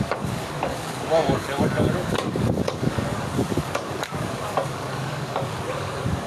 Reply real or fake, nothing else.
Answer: fake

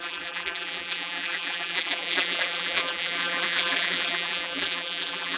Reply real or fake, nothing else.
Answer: fake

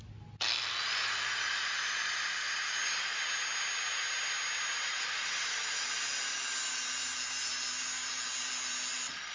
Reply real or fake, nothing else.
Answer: real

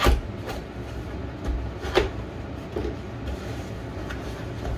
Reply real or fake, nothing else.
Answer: real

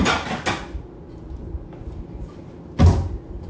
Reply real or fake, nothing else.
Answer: real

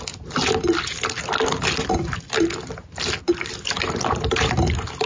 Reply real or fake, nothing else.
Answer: real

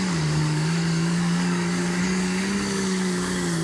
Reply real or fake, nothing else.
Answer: fake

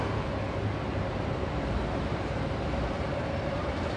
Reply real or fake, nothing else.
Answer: fake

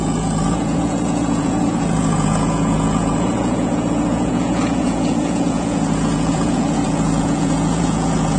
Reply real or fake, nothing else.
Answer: fake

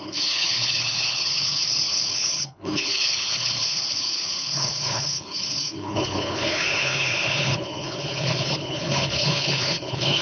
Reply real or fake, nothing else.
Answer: fake